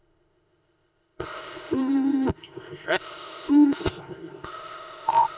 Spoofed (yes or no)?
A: yes